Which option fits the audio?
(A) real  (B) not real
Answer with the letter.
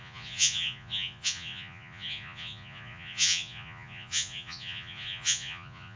B